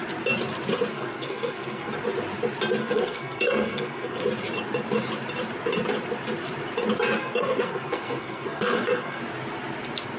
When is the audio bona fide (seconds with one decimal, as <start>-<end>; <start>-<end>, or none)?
0.0-0.9; 1.9-2.8; 4.2-7.2; 9.2-10.2